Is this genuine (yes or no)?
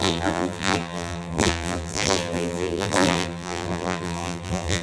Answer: no